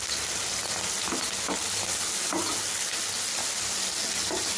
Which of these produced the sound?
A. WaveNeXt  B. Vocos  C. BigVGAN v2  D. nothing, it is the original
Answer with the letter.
D